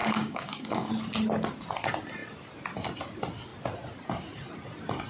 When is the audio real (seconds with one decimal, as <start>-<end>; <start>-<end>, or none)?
0.9-5.1

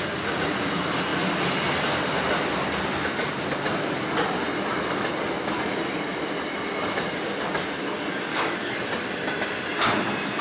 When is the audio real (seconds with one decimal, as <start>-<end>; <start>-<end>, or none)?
0.0-8.3; 8.8-10.4

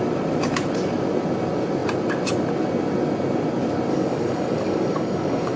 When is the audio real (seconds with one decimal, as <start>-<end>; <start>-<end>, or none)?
0.0-3.9